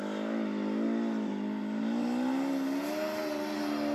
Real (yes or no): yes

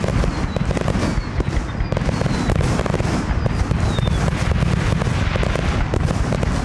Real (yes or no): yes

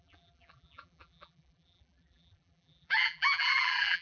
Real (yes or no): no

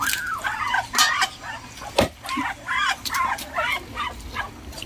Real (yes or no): yes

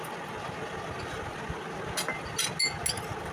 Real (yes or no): yes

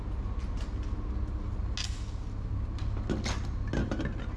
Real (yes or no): yes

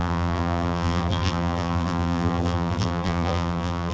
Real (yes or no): no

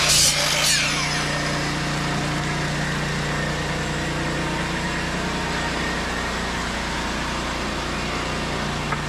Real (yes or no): yes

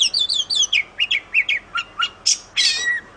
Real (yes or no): yes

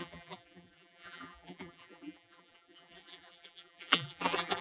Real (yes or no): no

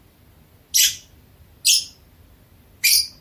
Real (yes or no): yes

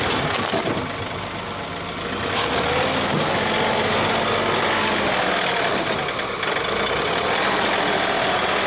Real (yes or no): yes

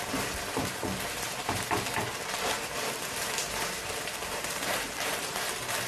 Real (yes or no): no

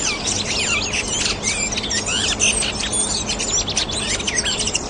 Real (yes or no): yes